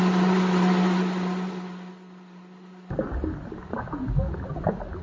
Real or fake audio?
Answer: real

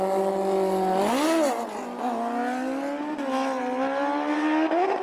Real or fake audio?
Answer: real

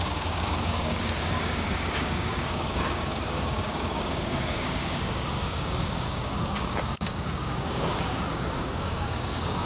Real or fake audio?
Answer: fake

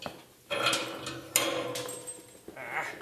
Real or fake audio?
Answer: real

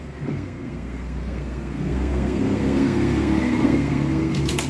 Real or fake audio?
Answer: fake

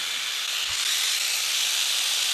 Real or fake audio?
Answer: real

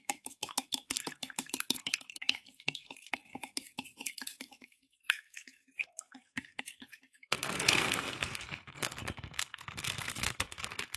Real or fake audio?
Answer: fake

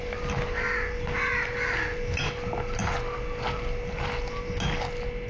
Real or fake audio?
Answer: real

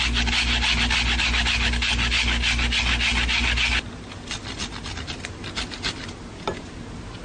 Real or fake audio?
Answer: real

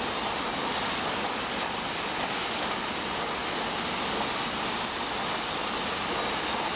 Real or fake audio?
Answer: real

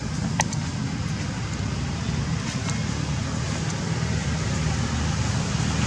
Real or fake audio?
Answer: real